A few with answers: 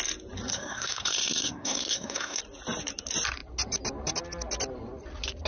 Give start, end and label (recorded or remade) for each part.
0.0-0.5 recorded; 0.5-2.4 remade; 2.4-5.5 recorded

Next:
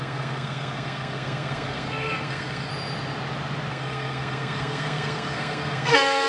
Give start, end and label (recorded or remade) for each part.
0.0-2.7 remade; 2.7-3.7 recorded; 3.7-6.3 remade